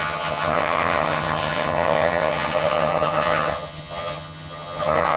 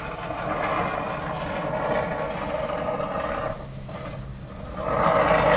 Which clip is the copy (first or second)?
first